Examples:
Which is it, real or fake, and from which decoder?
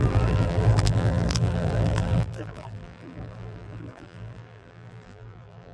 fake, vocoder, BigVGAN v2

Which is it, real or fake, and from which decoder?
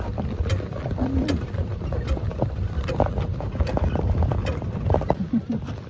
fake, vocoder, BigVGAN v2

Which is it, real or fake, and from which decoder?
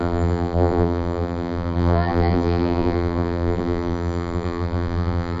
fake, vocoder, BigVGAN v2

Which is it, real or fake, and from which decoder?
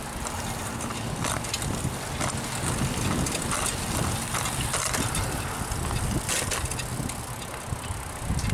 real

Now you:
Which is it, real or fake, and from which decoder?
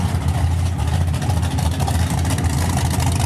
real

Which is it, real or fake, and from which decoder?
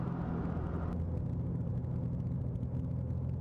real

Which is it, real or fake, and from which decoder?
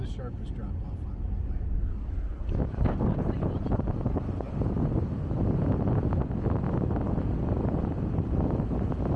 real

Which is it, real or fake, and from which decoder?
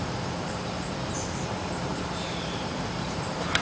fake, vocoder, BigVGAN v2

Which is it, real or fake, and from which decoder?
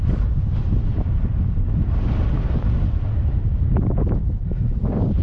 real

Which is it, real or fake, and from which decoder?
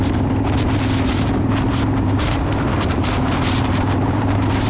fake, vocoder, BigVGAN v2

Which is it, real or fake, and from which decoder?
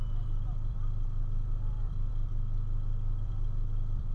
fake, vocoder, BigVGAN v2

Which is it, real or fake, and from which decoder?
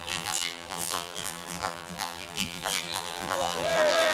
fake, vocoder, BigVGAN v2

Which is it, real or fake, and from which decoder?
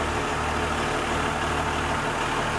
real